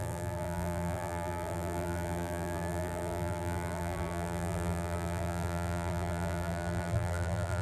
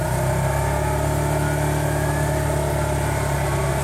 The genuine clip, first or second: second